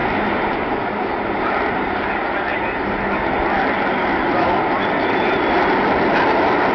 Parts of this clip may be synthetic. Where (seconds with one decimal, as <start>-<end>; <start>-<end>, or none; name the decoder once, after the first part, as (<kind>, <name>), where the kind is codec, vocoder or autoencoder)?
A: none

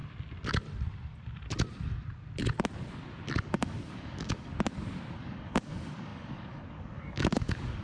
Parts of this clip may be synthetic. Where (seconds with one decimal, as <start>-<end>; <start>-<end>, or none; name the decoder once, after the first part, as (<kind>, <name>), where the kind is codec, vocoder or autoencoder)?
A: 3.4-4.5 (codec, DAC); 5.1-7.8

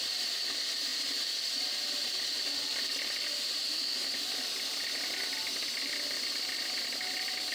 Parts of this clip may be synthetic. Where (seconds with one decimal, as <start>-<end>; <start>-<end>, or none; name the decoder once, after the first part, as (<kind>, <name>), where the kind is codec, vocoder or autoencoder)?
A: none

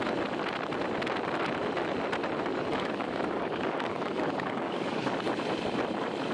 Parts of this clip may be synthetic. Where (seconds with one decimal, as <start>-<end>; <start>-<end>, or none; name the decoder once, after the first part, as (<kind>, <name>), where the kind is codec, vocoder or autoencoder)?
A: 2.5-5.3 (codec, DAC)

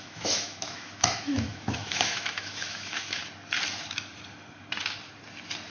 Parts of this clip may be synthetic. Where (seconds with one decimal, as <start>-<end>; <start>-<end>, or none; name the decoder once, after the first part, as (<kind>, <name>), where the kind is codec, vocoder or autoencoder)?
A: 0.0-3.2 (autoencoder, DAC-VAE)

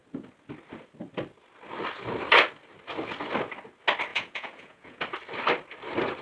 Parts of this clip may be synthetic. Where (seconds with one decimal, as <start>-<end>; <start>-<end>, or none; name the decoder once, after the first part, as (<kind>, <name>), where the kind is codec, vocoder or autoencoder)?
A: 4.1-5.0 (vocoder, Vocos)